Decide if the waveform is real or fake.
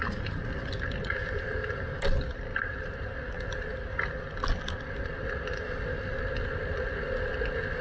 real